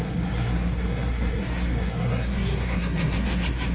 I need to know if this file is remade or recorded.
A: remade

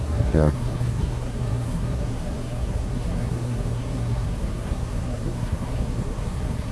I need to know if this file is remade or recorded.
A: remade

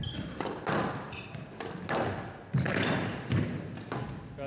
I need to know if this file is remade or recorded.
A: recorded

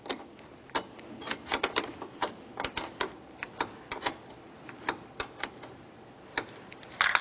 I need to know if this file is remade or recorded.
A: recorded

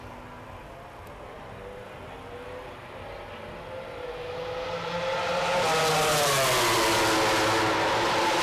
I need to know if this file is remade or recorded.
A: recorded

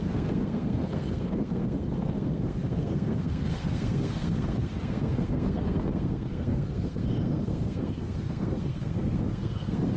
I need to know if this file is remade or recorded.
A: remade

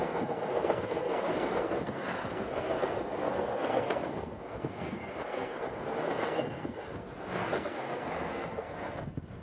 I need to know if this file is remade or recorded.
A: remade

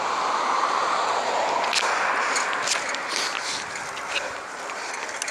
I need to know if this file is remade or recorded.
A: recorded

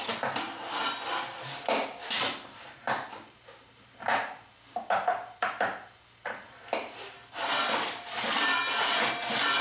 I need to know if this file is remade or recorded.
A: recorded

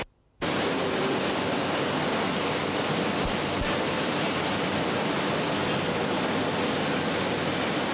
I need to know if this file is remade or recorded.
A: recorded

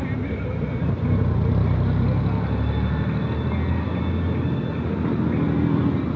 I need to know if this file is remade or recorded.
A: recorded